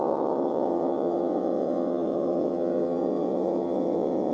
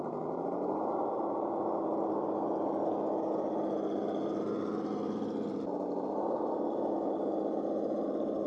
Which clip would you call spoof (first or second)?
first